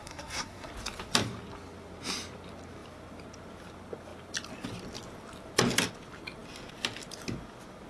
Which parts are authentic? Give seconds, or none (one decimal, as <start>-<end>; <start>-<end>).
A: 0.7-7.9